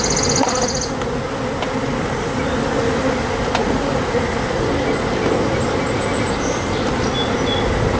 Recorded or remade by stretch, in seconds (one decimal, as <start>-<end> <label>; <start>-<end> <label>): 0.0-3.6 recorded; 3.6-4.2 remade; 4.2-8.0 recorded